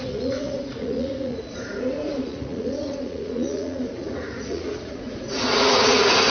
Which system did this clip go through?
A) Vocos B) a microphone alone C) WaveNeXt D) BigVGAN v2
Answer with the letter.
A